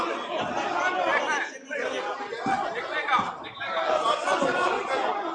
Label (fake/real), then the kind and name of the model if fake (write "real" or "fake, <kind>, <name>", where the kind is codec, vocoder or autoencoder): real